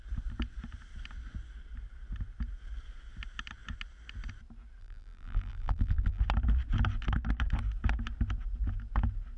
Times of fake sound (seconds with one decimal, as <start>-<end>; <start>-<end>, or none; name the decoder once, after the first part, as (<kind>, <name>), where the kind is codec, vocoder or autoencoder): 4.8-6.2 (vocoder, BigVGAN v2)